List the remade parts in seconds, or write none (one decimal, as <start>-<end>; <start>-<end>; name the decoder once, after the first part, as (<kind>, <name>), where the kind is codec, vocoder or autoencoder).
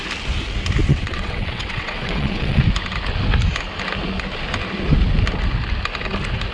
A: 0.8-2.6 (vocoder, WaveNeXt)